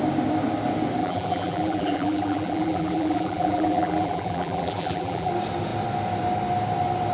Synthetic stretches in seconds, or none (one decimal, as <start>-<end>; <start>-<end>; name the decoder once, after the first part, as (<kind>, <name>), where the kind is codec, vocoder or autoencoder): 1.0-5.3 (vocoder, BigVGAN v2)